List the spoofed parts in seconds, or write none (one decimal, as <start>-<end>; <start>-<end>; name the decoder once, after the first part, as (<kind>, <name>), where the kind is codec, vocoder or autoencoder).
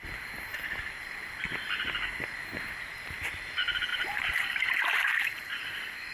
3.9-5.6 (vocoder, BigVGAN v2)